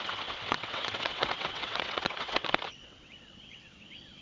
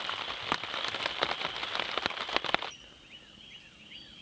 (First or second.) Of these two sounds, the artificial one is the first